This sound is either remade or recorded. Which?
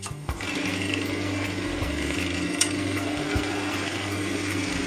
remade